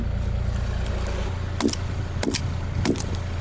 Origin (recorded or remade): recorded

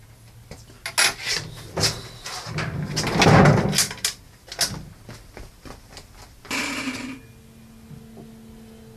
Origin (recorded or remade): recorded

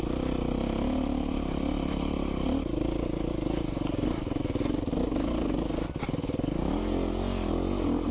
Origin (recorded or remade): recorded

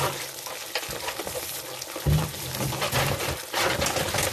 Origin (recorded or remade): recorded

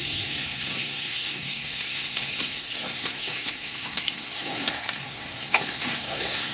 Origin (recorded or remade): remade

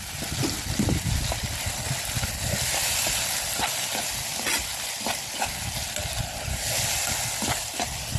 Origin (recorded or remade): recorded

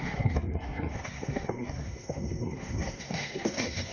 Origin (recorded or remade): remade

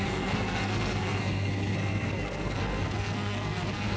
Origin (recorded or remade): remade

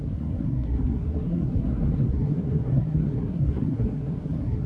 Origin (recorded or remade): remade